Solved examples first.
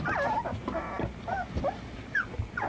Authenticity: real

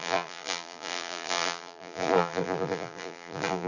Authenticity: fake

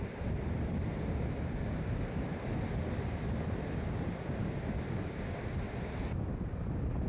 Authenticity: real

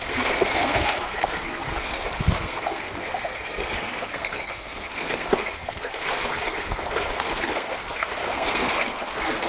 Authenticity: fake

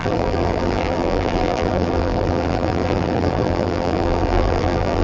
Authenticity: fake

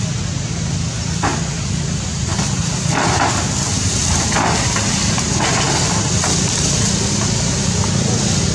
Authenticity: real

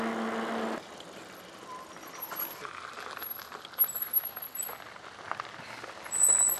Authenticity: real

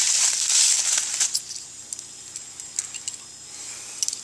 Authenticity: real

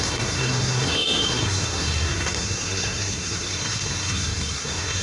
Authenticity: fake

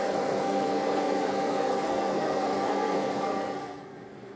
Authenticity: fake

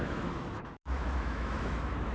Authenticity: fake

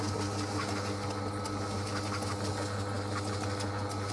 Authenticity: real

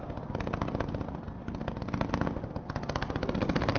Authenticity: real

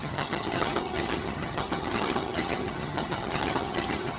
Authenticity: fake